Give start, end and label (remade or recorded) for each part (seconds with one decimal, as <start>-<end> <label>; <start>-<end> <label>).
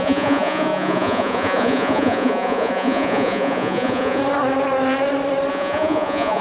0.0-4.2 remade; 4.2-5.5 recorded; 5.5-6.4 remade